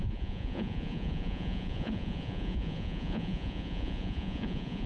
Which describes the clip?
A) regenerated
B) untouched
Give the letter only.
A